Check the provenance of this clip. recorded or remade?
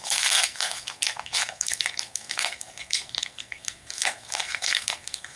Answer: remade